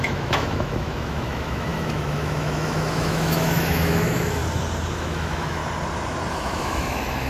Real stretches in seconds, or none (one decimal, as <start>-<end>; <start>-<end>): 4.4-4.9; 5.6-6.3